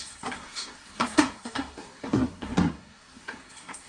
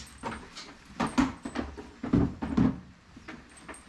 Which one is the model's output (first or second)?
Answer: first